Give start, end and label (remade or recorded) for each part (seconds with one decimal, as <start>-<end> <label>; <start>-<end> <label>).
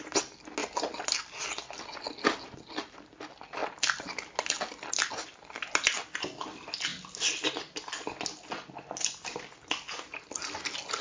0.0-11.0 recorded